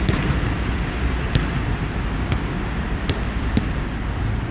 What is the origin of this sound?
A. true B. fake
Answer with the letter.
A